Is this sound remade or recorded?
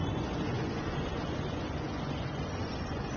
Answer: remade